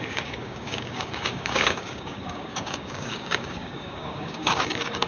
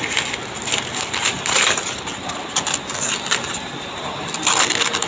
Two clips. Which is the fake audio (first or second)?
first